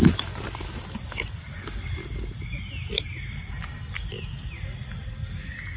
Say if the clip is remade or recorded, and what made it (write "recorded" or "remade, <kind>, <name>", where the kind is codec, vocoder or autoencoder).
recorded